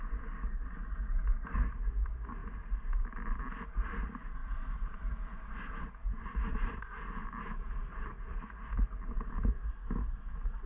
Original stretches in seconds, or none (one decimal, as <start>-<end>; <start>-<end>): 0.0-4.4; 5.2-6.0; 6.9-10.7